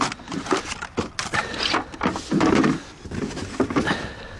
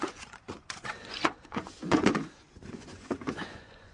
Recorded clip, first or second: first